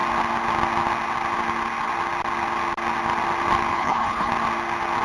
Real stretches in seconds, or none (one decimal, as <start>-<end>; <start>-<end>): 0.0-3.7; 4.3-5.0